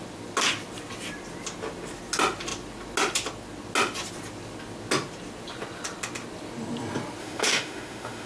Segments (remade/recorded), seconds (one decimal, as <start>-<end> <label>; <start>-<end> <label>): 0.0-7.2 recorded; 7.2-8.3 remade